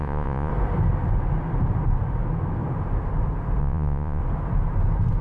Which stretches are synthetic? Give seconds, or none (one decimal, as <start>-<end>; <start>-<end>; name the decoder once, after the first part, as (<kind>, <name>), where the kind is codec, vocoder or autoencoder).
0.0-0.5 (vocoder, Vocos); 3.6-4.2